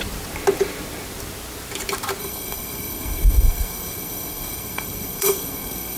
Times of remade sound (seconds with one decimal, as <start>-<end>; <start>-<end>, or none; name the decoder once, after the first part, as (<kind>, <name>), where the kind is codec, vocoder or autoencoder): 2.2-6.0 (codec, SNAC)